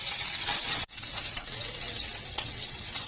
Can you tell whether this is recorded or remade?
remade